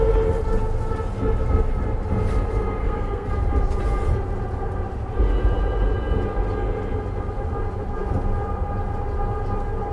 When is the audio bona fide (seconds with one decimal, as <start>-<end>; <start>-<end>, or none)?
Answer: 0.0-2.8; 3.3-9.9